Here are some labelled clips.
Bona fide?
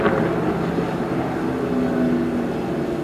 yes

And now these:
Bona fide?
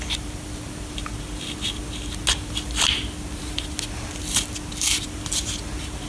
yes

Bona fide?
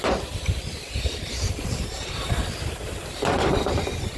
no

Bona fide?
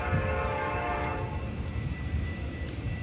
no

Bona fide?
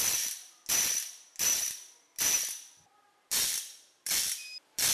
yes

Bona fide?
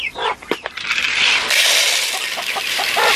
no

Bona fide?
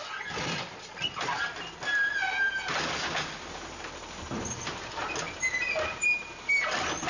yes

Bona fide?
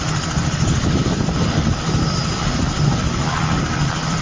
no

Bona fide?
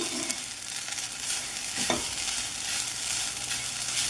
yes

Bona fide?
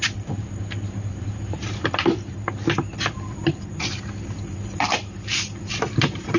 no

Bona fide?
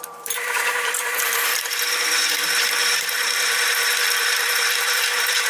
no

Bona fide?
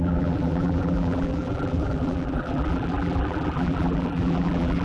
no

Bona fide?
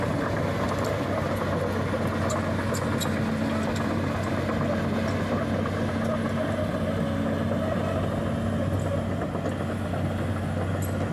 yes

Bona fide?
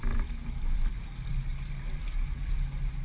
no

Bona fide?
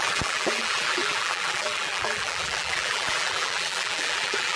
no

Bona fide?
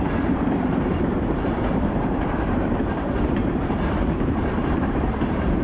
no